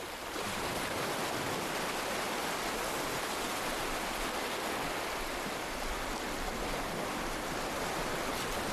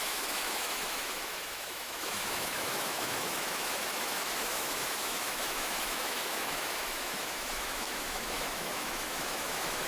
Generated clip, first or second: second